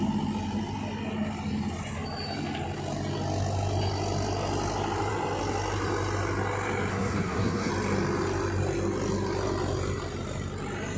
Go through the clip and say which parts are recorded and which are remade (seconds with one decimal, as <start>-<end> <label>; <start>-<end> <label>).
0.0-6.9 recorded; 6.9-7.7 remade; 7.7-11.0 recorded